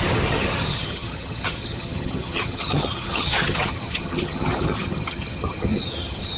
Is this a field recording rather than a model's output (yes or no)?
no